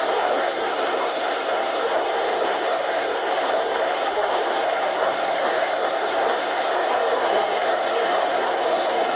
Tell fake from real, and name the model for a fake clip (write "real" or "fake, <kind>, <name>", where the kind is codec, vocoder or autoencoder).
fake, codec, SNAC